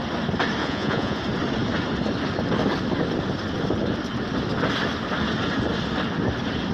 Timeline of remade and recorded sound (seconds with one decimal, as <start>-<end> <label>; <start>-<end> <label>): 0.0-0.6 recorded; 0.6-1.2 remade; 1.2-6.7 recorded